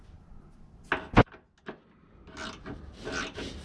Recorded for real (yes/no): yes